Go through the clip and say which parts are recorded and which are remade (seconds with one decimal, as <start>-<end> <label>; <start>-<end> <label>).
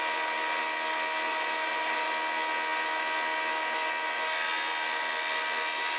0.0-1.3 recorded; 1.3-2.1 remade; 2.1-6.0 recorded